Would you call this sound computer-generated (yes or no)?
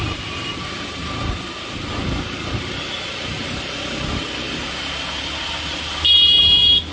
yes